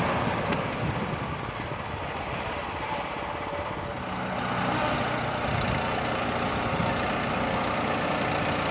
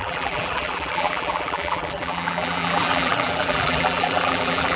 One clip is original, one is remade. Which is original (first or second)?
first